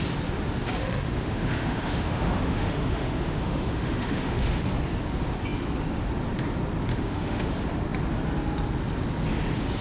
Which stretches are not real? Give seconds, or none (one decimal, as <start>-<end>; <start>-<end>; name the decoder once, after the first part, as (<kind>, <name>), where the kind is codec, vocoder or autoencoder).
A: 0.8-4.6 (autoencoder, DAC-VAE); 6.9-7.5